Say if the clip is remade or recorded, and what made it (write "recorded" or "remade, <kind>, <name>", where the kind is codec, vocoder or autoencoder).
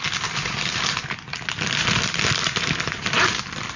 recorded